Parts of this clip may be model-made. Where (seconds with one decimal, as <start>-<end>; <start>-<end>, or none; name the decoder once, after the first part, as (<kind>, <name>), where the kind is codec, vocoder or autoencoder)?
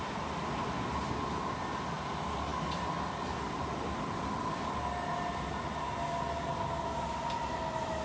none